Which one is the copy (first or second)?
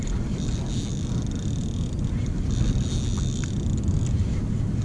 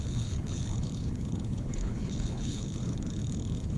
second